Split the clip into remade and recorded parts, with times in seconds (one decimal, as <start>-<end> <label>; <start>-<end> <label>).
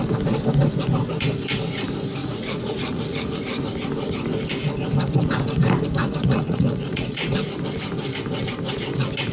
0.0-2.2 recorded; 2.2-3.2 remade; 3.2-6.0 recorded; 6.0-7.6 remade; 7.6-9.3 recorded